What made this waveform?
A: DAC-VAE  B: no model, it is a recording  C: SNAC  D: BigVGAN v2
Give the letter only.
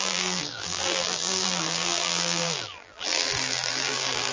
D